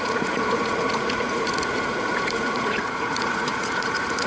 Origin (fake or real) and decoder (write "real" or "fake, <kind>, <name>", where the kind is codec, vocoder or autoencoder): fake, vocoder, Vocos